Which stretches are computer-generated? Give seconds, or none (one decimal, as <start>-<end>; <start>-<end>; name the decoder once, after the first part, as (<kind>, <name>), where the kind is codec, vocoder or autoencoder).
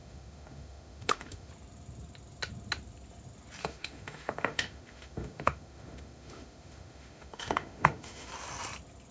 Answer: 0.0-1.5 (autoencoder, DAC-VAE); 3.6-8.3